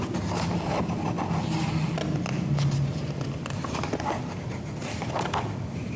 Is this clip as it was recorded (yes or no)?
yes